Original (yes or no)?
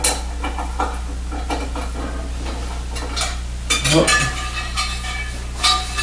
yes